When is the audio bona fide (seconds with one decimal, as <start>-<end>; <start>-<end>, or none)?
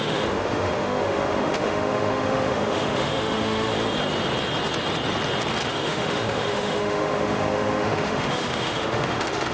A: 3.7-5.7